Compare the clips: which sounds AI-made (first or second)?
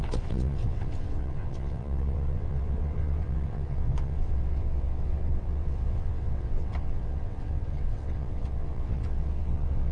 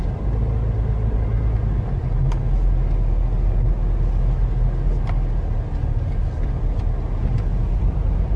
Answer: first